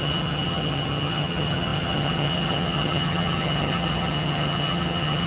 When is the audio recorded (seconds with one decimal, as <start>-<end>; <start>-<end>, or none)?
none